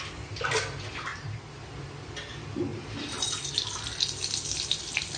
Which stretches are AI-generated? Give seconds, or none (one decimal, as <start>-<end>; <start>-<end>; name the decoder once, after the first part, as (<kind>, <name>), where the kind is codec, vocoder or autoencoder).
1.1-1.6 (vocoder, BigVGAN v2); 2.7-3.4